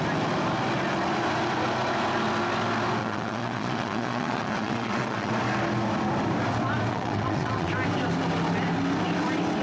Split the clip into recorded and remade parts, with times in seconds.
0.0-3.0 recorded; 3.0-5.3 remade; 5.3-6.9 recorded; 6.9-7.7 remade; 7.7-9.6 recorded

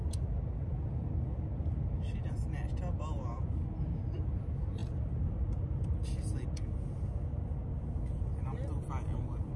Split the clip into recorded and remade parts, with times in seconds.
0.0-9.6 recorded

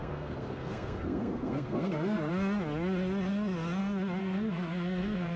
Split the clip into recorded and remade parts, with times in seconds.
0.0-2.3 remade; 2.3-4.2 recorded; 4.2-5.4 remade

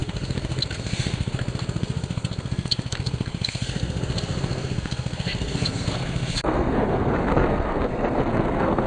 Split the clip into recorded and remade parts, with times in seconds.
0.0-8.9 remade

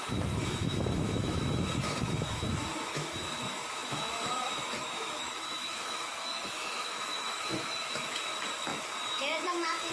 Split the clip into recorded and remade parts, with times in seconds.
0.0-9.9 remade

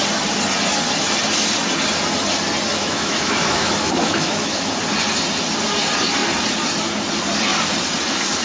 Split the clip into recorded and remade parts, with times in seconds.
0.0-2.7 recorded; 2.7-4.7 remade; 4.7-8.4 recorded